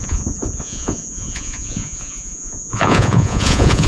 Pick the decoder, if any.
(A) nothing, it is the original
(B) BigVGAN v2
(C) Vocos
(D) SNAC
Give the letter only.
C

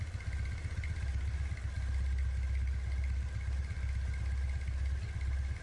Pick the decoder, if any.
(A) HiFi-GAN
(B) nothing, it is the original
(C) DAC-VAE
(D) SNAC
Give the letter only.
B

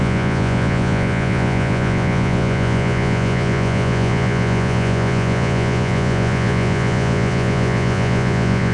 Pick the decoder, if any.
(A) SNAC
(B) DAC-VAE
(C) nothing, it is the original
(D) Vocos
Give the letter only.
D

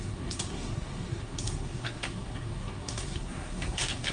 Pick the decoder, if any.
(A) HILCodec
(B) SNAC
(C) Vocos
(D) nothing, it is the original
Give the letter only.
B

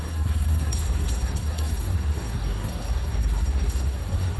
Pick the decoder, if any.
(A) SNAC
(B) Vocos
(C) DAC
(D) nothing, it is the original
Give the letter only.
A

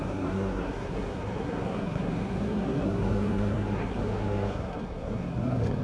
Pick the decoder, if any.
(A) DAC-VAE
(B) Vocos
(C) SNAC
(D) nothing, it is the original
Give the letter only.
C